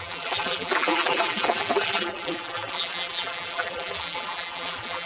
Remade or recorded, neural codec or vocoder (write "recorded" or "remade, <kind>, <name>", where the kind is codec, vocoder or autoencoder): remade, vocoder, BigVGAN v2